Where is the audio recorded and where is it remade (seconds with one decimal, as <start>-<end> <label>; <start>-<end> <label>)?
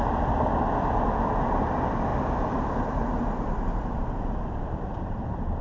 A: 0.0-2.1 recorded; 2.1-5.6 remade